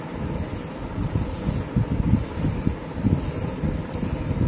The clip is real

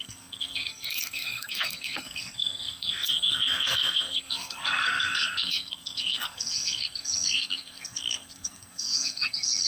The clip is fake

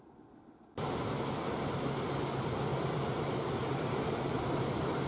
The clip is real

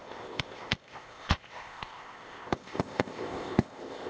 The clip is fake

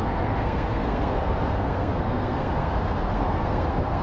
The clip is fake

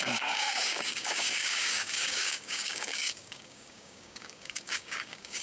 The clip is fake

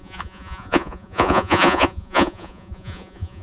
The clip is fake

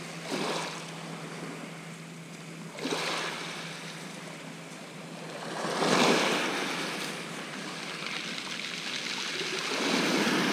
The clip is real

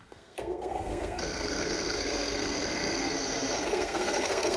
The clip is fake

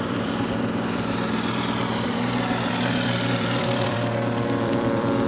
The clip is fake